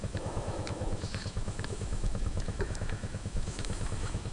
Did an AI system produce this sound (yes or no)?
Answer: yes